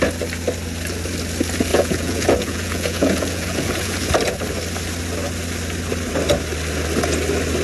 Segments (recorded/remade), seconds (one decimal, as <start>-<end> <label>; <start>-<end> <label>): 0.0-1.7 recorded; 1.7-4.1 remade; 4.1-7.6 recorded